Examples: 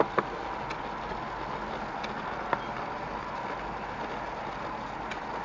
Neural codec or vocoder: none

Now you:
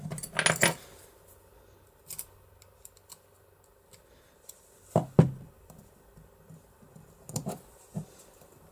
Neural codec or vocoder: none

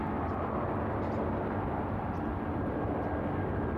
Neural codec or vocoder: none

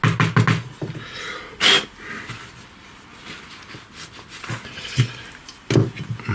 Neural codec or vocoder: none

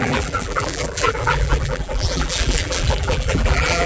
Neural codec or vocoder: vocoder, BigVGAN v2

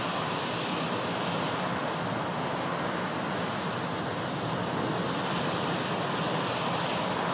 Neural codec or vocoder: none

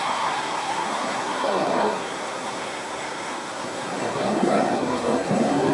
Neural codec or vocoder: codec, SNAC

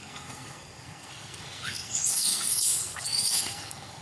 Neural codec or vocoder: codec, SNAC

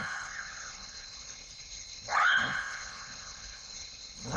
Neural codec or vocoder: codec, HILCodec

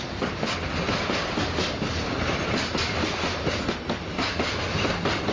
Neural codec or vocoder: none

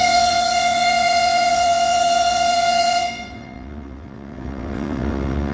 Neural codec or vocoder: vocoder, WaveNeXt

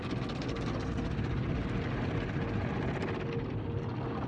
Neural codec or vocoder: none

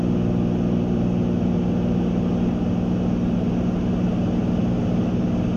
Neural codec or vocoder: none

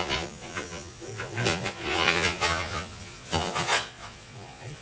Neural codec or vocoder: vocoder, Vocos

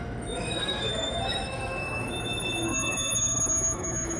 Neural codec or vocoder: autoencoder, DAC-VAE